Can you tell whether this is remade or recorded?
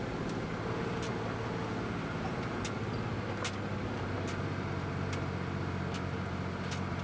recorded